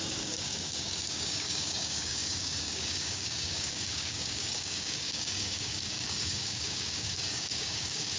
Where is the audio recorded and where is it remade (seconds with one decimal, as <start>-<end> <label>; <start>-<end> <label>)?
0.0-8.2 remade